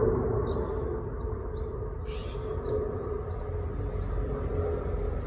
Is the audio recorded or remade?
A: recorded